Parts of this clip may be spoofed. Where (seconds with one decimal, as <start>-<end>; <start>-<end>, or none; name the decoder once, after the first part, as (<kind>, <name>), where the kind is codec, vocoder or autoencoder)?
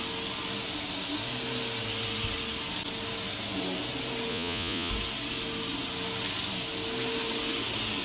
4.3-4.9 (vocoder, Vocos)